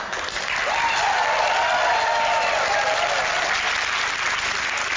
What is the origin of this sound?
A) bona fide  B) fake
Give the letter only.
A